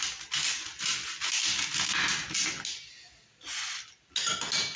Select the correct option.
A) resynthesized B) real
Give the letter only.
B